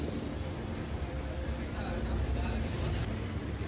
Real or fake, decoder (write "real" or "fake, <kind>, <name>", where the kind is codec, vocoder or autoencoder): fake, vocoder, BigVGAN v2